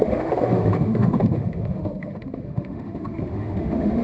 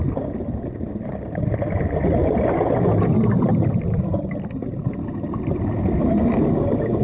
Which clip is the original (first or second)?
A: second